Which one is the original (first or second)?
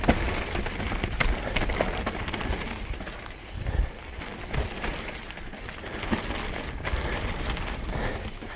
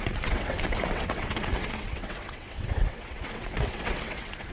first